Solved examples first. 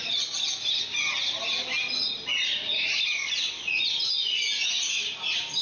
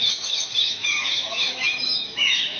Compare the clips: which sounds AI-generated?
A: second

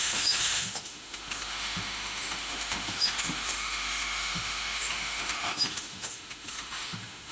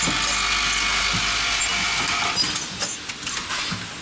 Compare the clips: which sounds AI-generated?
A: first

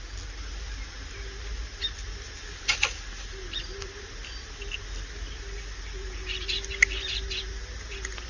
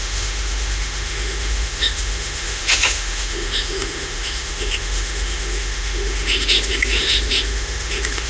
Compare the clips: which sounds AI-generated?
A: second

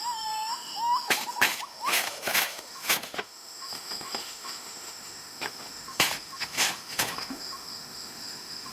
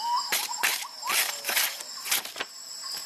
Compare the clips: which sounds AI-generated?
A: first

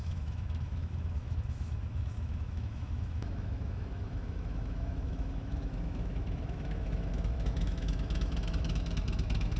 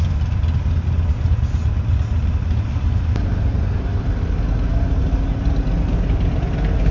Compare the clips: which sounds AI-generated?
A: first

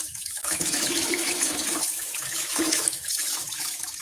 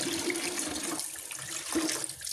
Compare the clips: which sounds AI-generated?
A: first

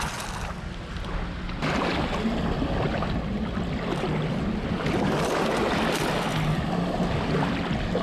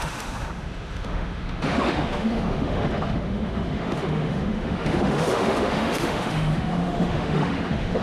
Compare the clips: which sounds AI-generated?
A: second